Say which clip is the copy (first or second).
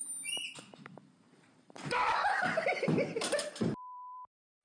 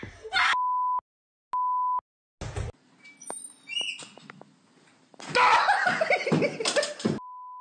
first